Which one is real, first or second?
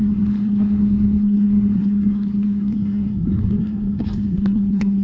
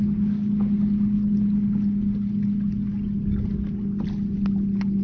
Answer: second